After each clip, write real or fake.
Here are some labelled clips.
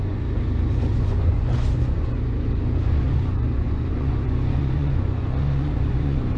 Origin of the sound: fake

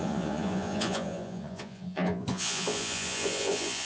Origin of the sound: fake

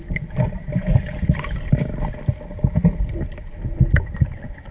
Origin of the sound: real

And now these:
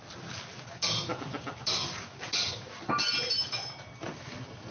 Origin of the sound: real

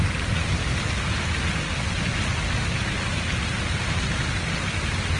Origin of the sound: real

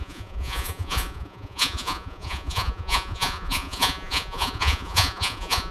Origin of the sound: fake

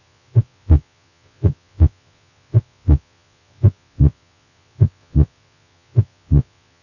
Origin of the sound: fake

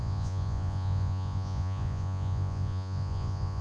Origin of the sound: fake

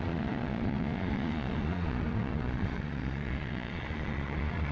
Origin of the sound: fake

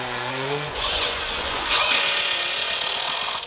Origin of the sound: fake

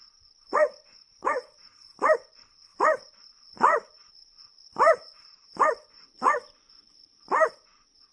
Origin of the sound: fake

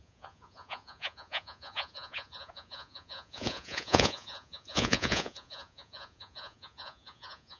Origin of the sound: fake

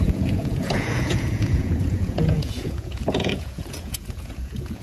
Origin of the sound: fake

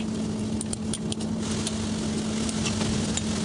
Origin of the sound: real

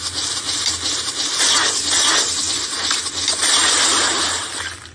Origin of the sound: real